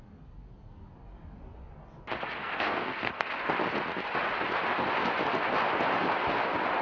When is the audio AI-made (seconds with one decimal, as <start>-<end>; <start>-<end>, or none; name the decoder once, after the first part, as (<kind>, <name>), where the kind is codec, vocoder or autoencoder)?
2.4-3.3 (codec, SNAC)